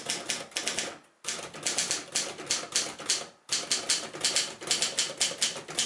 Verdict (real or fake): real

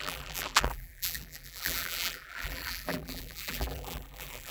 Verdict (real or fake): fake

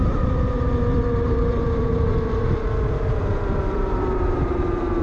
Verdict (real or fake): fake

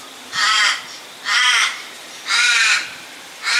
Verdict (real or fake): fake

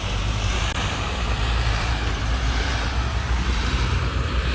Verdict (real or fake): fake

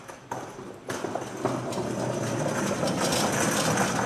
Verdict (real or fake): real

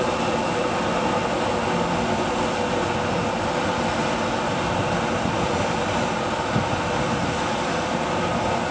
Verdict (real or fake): real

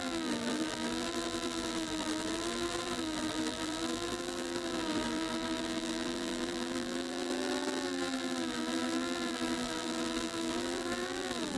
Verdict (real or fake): fake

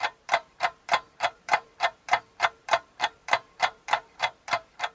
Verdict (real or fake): fake